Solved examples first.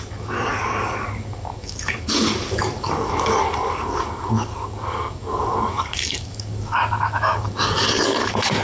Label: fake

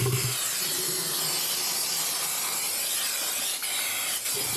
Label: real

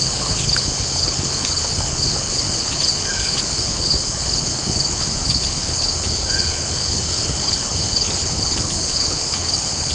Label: fake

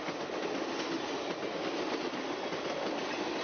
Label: real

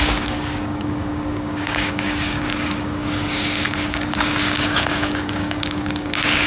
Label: fake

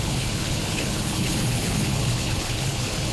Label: fake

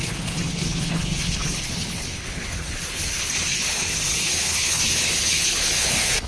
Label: fake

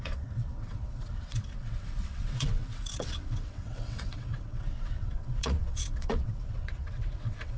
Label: fake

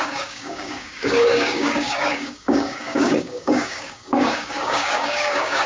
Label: fake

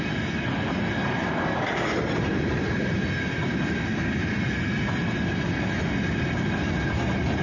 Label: real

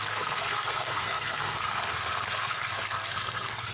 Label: fake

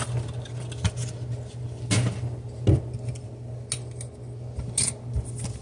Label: real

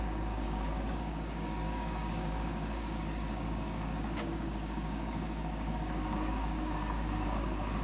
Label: fake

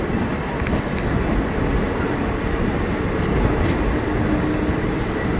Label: real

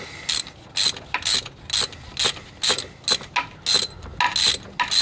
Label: real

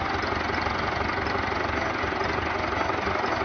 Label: real